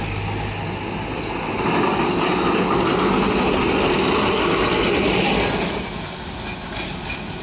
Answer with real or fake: real